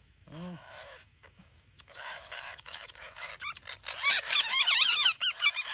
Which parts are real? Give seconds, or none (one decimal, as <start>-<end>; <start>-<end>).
3.3-4.1